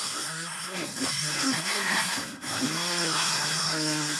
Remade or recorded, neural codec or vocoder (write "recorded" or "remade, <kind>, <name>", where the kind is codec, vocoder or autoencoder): remade, codec, SNAC